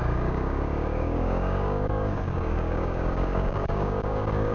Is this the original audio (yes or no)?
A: no